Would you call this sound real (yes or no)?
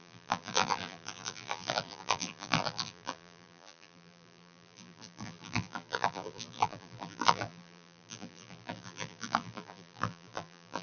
no